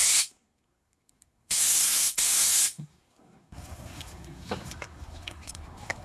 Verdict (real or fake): fake